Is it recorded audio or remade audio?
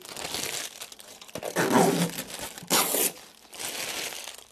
recorded